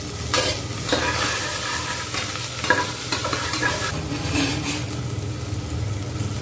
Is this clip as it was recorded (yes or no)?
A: yes